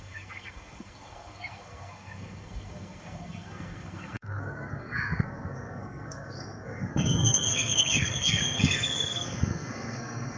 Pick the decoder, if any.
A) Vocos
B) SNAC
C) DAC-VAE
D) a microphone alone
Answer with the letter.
B